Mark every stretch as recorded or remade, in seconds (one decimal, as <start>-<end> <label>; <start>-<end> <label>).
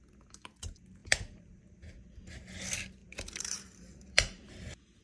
0.0-1.0 recorded; 1.0-1.6 remade; 1.6-3.0 recorded; 3.0-4.5 remade; 4.5-5.0 recorded